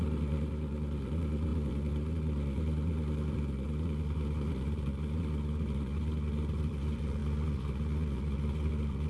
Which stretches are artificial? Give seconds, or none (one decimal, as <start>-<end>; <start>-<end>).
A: 0.0-9.1